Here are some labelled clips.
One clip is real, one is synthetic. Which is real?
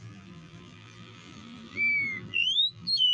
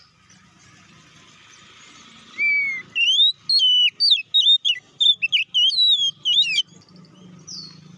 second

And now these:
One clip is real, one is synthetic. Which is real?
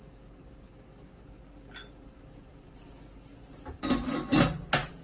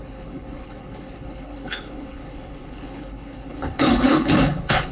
first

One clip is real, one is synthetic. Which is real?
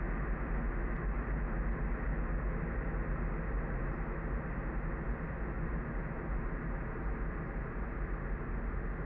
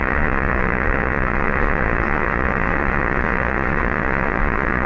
first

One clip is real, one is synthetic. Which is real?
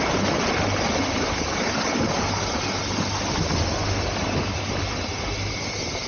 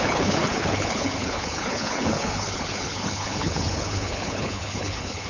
first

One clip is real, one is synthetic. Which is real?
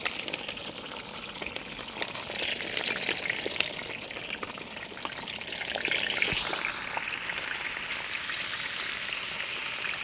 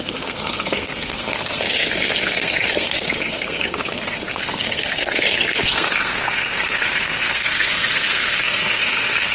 first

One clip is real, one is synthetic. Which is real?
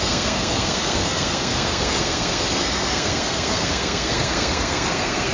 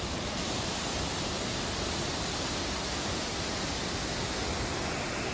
second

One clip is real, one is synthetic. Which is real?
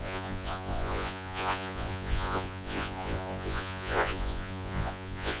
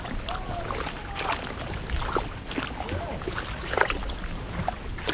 second